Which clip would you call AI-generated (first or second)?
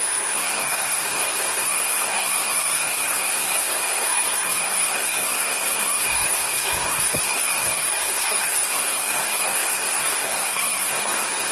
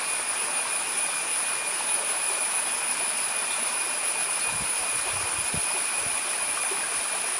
first